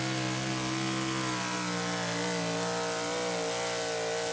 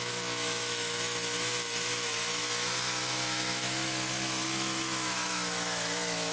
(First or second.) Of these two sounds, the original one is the first